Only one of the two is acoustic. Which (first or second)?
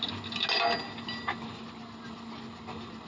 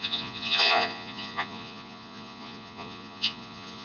first